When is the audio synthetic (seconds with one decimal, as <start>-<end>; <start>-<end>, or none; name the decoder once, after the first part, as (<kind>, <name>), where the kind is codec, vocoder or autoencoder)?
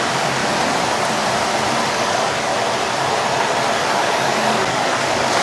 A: 0.0-0.4 (codec, DAC); 1.9-2.5; 3.9-5.4